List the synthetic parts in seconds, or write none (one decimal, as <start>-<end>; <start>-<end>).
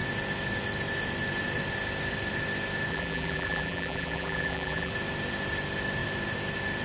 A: 2.9-4.9